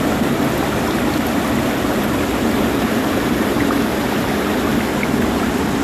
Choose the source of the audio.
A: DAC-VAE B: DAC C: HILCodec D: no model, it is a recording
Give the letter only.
D